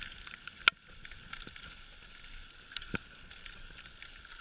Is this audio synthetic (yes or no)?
no